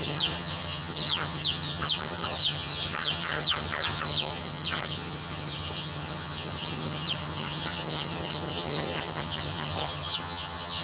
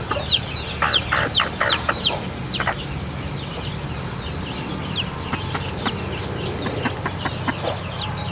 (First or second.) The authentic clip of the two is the second